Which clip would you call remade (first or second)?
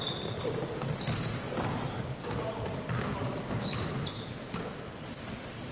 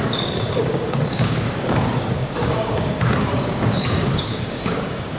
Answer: second